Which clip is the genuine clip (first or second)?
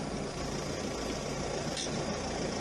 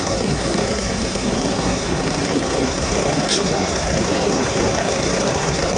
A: first